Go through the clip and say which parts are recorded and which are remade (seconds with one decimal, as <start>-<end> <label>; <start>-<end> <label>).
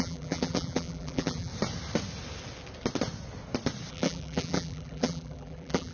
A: 0.0-1.5 remade; 1.5-3.9 recorded; 3.9-5.9 remade